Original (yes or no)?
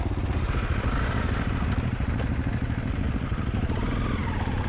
yes